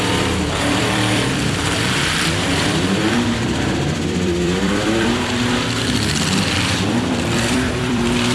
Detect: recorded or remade remade